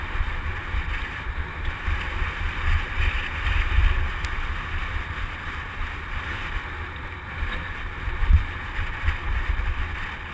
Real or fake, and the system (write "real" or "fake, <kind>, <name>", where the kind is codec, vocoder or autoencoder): real